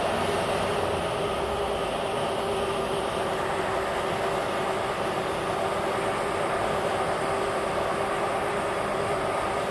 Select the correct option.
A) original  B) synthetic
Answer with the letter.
A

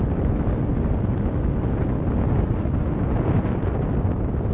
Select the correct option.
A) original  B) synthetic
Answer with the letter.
A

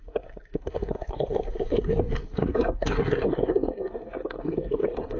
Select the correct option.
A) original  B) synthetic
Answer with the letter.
B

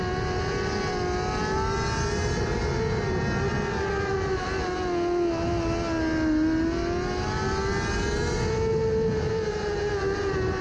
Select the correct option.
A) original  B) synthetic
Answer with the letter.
A